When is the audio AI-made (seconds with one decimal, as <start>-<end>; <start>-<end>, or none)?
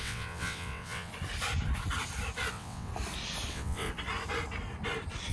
0.0-1.1; 2.5-2.9; 3.5-3.9